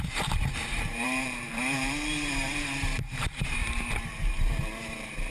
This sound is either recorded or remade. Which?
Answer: remade